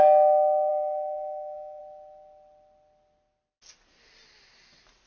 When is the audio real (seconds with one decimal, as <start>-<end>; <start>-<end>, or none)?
0.0-0.7; 1.8-5.1